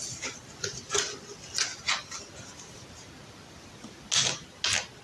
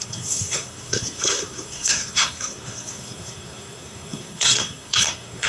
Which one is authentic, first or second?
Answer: first